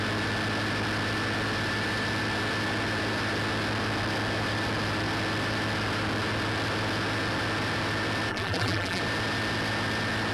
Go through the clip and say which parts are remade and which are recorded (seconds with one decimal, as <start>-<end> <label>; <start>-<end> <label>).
0.0-8.3 recorded; 8.3-9.0 remade; 9.0-10.3 recorded